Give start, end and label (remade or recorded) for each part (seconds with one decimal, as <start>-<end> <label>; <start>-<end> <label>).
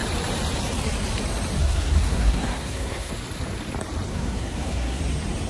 0.0-1.6 recorded; 1.6-3.1 remade; 3.1-4.1 recorded; 4.1-5.0 remade; 5.0-5.5 recorded